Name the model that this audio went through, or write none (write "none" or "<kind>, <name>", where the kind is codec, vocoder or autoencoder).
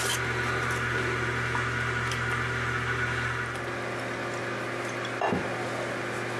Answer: none